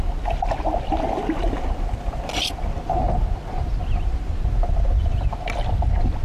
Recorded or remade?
recorded